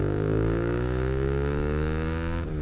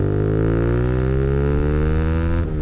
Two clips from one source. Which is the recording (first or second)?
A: second